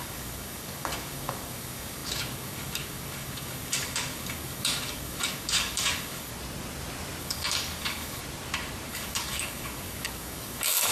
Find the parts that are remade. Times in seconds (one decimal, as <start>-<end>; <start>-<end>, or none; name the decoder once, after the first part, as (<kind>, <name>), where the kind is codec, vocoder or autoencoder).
0.0-6.3 (codec, DAC); 7.2-8.2; 8.9-10.9